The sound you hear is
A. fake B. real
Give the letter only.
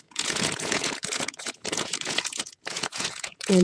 A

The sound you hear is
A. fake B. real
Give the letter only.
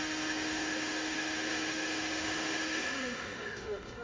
A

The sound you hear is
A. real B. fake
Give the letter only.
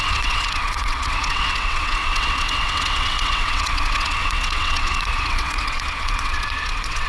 B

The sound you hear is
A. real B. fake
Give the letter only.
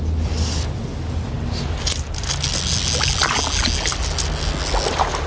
A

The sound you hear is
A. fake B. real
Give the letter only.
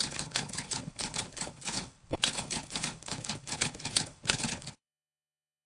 A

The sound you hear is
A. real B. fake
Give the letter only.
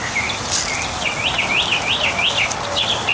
A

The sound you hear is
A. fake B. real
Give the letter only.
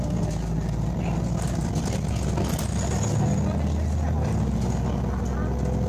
B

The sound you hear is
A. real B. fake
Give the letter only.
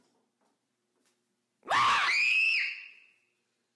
A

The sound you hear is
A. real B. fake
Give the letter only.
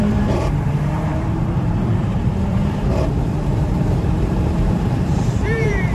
B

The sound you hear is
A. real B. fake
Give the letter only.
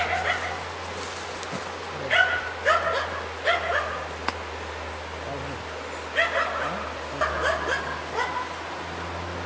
A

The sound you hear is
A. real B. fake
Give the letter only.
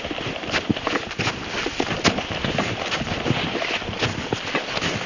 A